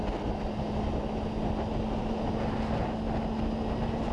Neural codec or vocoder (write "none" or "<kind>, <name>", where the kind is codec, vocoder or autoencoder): none